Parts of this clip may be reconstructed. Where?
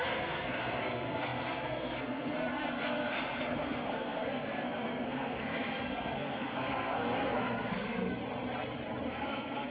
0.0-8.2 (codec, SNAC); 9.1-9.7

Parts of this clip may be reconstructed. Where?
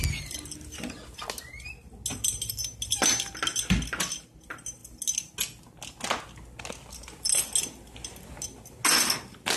none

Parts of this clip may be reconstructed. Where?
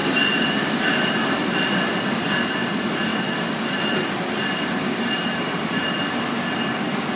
none